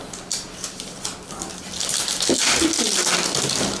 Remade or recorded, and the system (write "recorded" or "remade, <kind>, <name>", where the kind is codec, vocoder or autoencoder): recorded